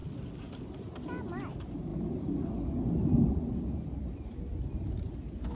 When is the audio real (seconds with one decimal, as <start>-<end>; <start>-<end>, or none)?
0.0-5.5